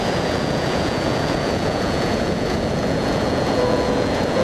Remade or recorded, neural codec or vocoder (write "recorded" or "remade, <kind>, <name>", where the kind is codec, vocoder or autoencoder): remade, vocoder, Vocos